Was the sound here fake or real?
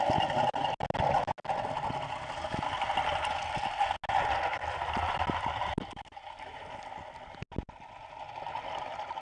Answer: real